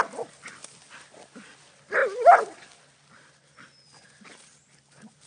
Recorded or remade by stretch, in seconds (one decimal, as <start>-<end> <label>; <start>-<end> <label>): 0.0-5.3 recorded